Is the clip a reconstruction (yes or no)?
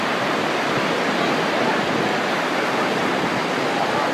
no